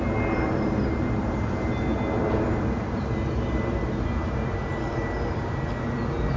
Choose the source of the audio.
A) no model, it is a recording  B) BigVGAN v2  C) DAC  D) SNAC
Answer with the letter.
A